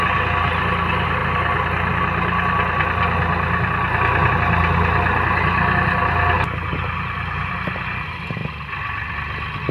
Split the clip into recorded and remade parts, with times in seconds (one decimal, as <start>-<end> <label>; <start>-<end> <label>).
0.0-8.4 recorded; 8.4-9.1 remade; 9.1-9.7 recorded